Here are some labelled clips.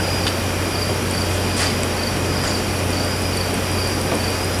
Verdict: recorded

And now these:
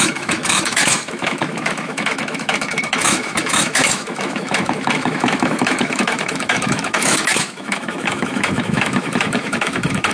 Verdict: remade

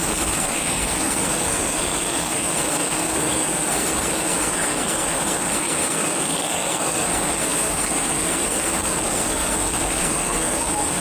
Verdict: remade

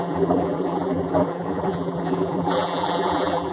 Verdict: remade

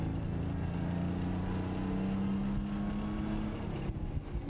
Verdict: recorded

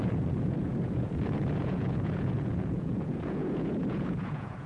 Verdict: remade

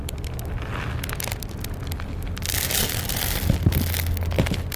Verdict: recorded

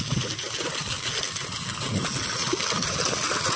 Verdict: recorded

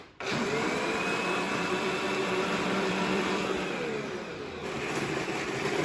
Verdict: remade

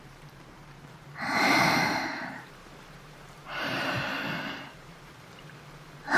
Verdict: remade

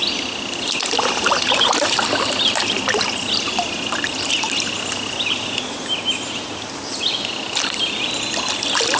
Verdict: recorded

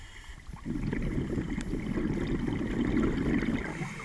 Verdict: recorded